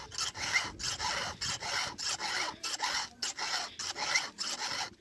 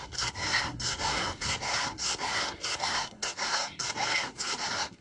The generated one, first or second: second